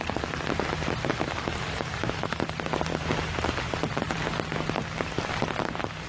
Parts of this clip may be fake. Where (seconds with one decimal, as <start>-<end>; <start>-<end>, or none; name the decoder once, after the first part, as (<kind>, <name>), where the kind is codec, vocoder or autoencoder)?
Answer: 2.0-2.5 (autoencoder, DAC-VAE)